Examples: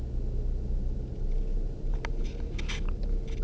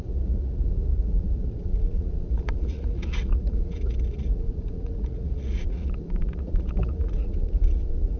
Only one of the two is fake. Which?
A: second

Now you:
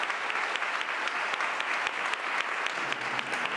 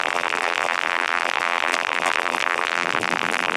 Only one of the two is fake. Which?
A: second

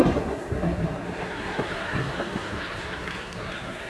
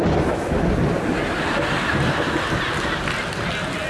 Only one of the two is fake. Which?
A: first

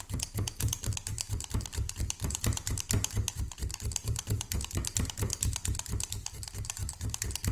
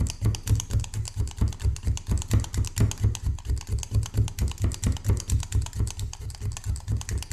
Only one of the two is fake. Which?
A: first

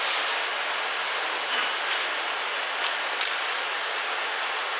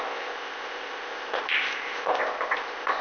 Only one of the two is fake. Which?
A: second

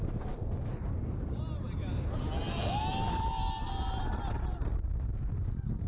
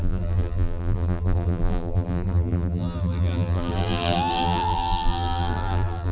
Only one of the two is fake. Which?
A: second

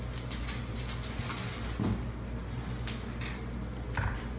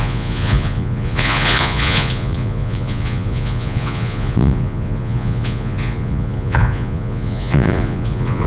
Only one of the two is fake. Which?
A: second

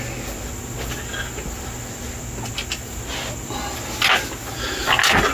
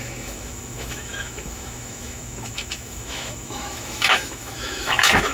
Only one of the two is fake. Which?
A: second